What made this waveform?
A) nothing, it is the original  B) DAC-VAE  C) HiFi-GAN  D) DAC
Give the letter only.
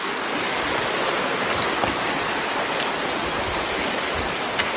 A